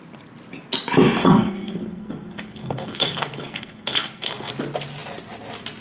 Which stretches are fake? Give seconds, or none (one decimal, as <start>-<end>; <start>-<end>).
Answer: 1.2-4.5